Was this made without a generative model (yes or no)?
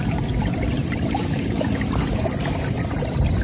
no